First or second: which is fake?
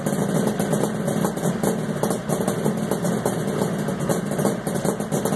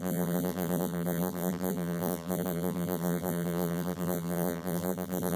second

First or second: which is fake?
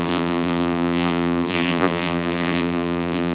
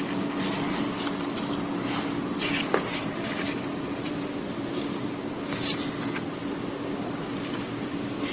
first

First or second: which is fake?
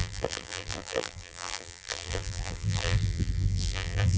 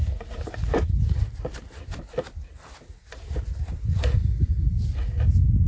first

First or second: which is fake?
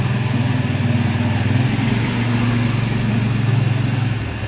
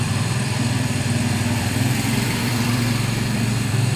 second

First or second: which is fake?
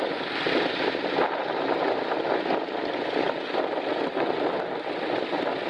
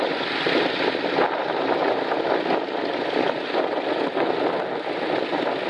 first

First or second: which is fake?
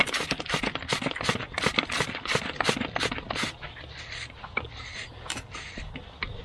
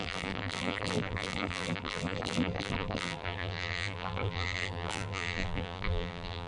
second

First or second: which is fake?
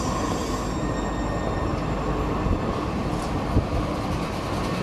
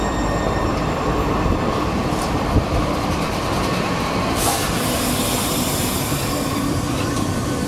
second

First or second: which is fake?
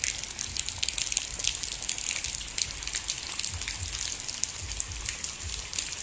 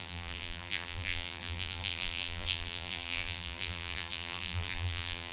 second